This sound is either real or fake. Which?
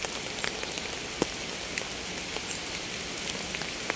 real